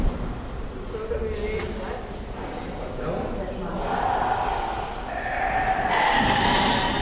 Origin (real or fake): real